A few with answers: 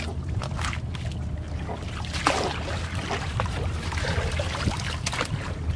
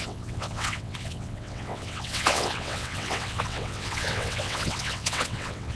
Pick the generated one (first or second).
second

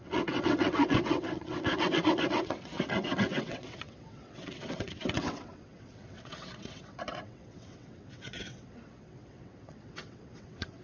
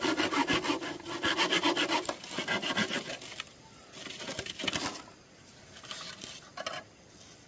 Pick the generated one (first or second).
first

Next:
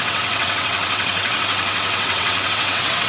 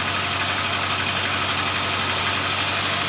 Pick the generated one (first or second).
first